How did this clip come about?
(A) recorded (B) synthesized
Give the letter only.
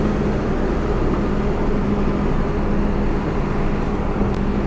A